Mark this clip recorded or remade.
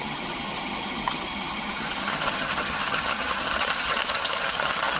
remade